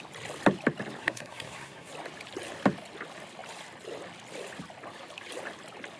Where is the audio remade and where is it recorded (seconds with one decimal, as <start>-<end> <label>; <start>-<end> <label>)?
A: 0.0-1.0 recorded; 1.0-1.9 remade; 1.9-6.0 recorded